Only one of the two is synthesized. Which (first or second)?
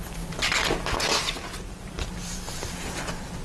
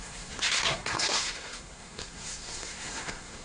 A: second